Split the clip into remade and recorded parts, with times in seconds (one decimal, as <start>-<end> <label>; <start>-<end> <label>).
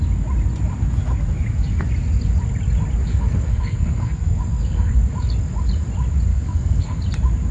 0.0-3.1 recorded; 3.1-4.9 remade; 4.9-6.3 recorded; 6.3-7.0 remade; 7.0-7.5 recorded